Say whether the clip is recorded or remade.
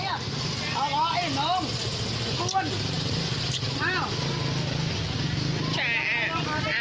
recorded